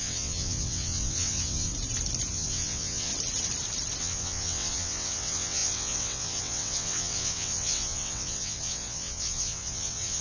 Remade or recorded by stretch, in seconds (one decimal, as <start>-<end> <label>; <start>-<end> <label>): 0.0-1.7 remade; 1.7-2.3 recorded; 2.3-3.1 remade; 3.1-4.0 recorded; 4.0-10.2 remade